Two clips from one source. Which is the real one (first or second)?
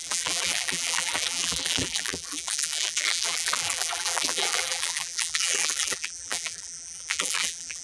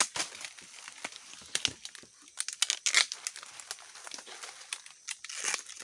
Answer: second